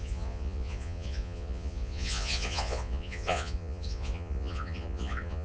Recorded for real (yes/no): no